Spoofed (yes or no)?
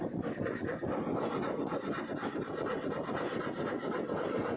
no